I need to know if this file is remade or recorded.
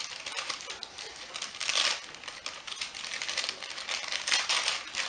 recorded